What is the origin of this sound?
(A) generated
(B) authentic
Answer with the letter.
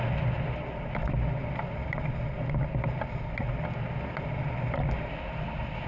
B